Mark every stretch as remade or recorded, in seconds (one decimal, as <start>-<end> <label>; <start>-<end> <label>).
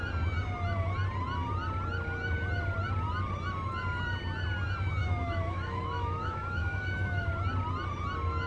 0.0-5.0 recorded; 5.0-7.3 remade; 7.3-8.5 recorded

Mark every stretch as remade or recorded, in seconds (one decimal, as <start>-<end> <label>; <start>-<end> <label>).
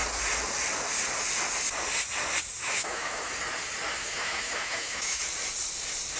0.0-2.6 recorded; 2.6-3.3 remade; 3.3-4.0 recorded; 4.0-5.2 remade; 5.2-6.2 recorded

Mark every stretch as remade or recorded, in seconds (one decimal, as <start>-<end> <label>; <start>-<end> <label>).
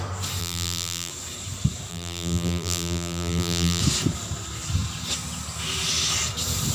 0.0-0.4 recorded; 0.4-1.1 remade; 1.1-1.9 recorded; 1.9-3.8 remade; 3.8-6.7 recorded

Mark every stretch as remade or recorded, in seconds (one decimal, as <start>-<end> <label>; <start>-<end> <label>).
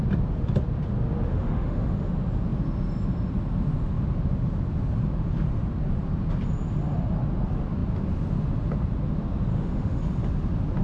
0.0-1.3 recorded; 1.3-2.1 remade; 2.1-9.5 recorded; 9.5-10.0 remade; 10.0-10.8 recorded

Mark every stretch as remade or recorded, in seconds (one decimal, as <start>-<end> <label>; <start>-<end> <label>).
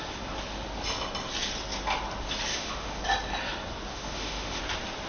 0.0-2.5 recorded; 2.5-3.0 remade; 3.0-3.9 recorded; 3.9-4.6 remade; 4.6-5.1 recorded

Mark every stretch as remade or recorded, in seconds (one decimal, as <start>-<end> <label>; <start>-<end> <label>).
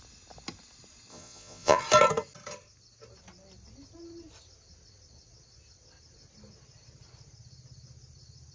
0.0-1.1 recorded; 1.1-1.8 remade; 1.8-8.5 recorded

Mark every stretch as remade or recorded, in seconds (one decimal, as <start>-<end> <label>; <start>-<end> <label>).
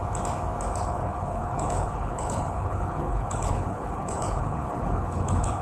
0.0-0.8 recorded; 0.8-5.6 remade